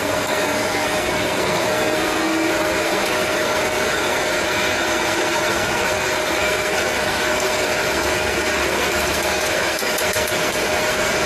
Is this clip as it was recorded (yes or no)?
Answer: no